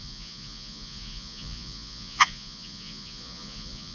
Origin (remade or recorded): remade